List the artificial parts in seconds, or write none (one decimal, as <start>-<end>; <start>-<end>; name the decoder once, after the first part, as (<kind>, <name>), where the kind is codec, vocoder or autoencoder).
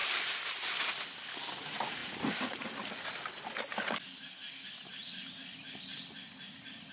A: 0.0-0.5 (vocoder, BigVGAN v2); 2.0-2.8